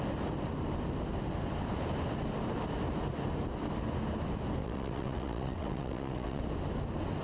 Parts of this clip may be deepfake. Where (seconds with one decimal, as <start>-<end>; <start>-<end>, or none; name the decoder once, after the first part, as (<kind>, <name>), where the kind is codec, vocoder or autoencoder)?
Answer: 4.6-6.4 (vocoder, WaveNeXt)